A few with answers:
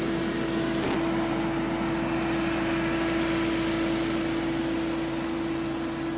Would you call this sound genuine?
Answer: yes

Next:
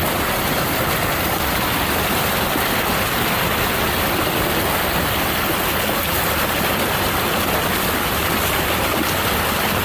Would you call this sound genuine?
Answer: yes